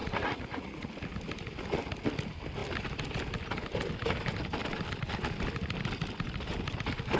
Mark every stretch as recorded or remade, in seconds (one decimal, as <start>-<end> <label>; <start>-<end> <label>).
0.0-0.9 remade; 0.9-7.2 recorded